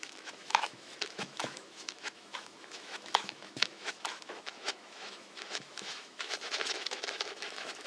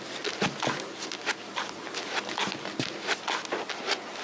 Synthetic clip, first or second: first